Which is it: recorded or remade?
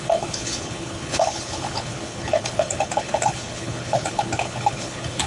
remade